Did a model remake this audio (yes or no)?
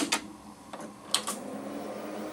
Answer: no